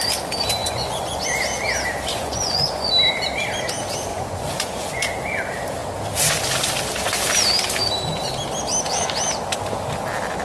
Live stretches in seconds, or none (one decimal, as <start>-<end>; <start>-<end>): 0.0-0.6; 1.2-2.1; 2.9-4.1; 5.0-10.4